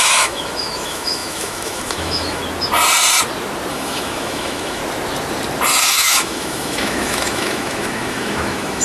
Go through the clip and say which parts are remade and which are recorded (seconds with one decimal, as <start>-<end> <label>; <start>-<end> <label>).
0.0-2.4 remade; 2.4-3.7 recorded; 3.7-4.8 remade; 4.8-5.8 recorded; 5.8-8.8 remade